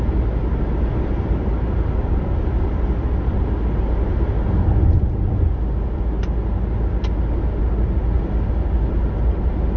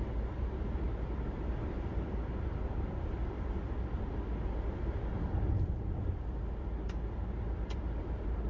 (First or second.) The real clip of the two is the first